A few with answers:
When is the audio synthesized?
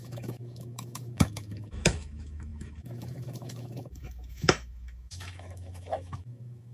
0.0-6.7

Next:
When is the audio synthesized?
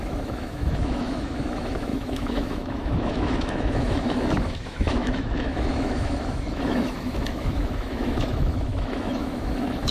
0.0-9.9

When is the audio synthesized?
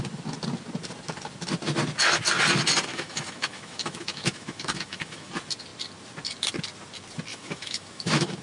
2.9-5.3; 7.3-8.4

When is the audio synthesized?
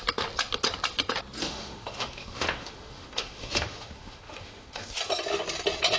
1.4-5.0